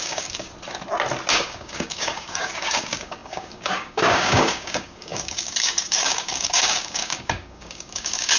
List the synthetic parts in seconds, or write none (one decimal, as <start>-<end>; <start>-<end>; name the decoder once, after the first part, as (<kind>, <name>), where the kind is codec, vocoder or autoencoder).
0.0-0.5 (codec, DAC); 1.3-8.4